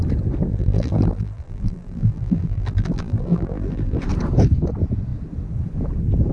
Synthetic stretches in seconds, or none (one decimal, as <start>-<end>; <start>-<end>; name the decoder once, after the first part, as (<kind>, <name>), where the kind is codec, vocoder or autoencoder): 0.5-4.0 (vocoder, BigVGAN v2)